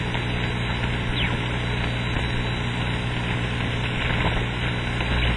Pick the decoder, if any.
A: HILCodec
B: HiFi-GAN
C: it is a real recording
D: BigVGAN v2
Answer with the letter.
C